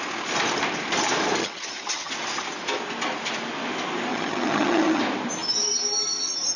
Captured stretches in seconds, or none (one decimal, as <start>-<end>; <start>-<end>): 0.0-1.4; 2.1-4.1; 5.0-6.6